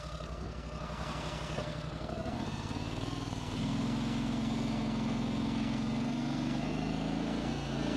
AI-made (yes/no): yes